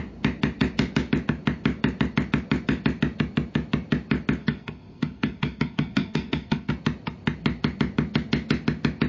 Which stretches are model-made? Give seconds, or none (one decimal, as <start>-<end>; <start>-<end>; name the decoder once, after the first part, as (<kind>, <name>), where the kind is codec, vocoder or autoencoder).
4.4-6.7 (codec, SNAC)